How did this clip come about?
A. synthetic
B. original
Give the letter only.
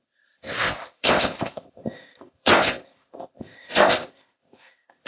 A